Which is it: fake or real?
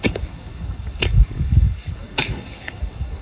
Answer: fake